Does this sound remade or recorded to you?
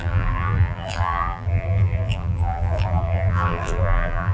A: remade